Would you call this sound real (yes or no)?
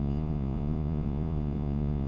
no